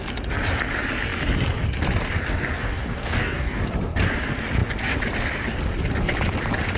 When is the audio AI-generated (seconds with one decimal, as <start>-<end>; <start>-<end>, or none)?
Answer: 2.6-3.6